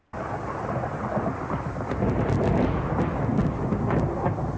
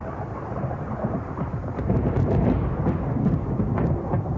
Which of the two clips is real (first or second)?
first